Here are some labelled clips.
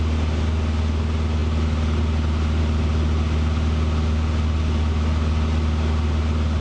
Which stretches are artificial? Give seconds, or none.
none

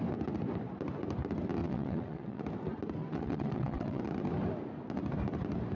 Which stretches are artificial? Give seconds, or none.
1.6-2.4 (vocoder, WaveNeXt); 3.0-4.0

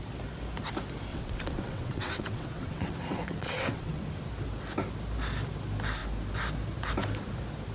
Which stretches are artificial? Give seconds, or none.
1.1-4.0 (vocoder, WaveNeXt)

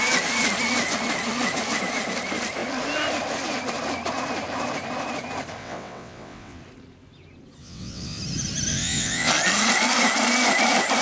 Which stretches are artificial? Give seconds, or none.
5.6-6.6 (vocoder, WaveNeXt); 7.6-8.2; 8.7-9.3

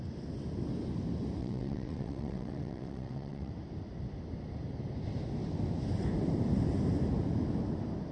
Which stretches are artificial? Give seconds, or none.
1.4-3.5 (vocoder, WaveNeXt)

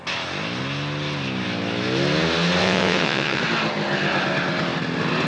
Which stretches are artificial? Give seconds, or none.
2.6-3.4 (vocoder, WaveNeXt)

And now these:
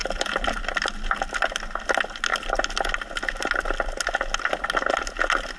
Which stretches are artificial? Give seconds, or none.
none

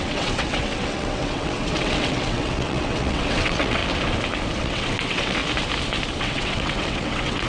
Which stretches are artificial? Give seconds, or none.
0.0-3.8 (vocoder, WaveNeXt); 4.6-5.4; 6.2-7.5